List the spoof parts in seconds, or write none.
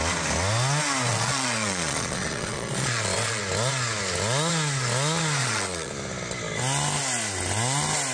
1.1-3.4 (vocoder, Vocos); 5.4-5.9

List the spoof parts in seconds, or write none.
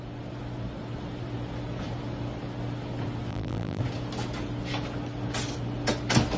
3.3-3.8 (vocoder, BigVGAN v2)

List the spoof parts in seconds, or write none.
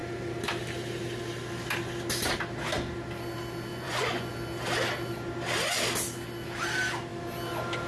3.7-4.3 (vocoder, Vocos)